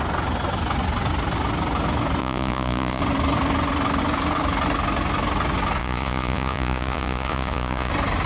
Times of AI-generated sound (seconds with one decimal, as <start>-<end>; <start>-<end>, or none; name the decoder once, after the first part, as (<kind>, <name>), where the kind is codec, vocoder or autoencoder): 2.2-3.0 (vocoder, Vocos); 5.8-7.9